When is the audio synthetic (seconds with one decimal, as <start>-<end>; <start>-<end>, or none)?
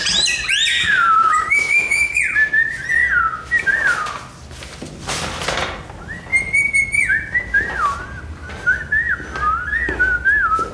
0.8-2.2